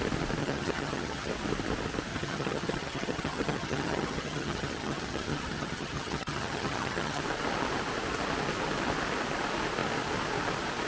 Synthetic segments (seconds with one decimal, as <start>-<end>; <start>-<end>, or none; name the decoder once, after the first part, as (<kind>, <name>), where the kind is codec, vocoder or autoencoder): 0.4-1.3 (vocoder, HiFi-GAN); 2.1-7.2